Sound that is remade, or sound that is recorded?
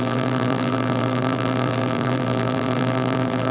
remade